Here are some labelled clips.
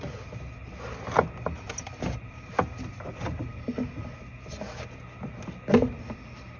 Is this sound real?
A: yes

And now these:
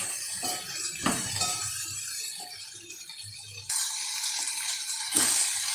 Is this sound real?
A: no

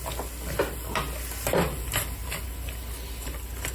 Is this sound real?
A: yes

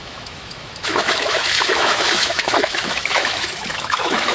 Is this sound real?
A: no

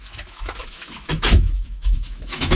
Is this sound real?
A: no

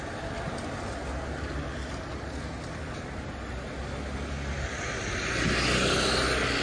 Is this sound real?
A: yes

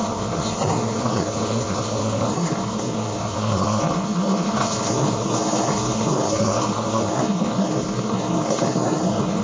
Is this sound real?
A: no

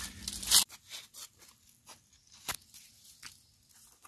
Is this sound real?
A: yes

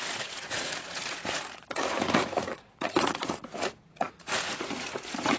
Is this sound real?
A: no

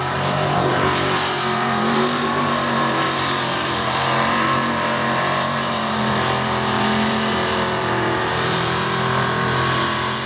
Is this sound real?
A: no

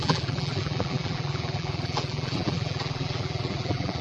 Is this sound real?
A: no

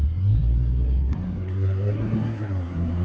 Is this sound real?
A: no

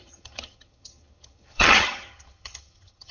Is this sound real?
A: no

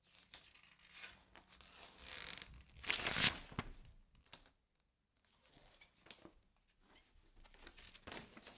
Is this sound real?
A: yes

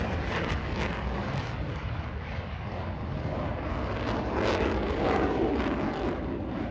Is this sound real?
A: no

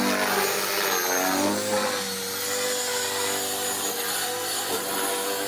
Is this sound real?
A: yes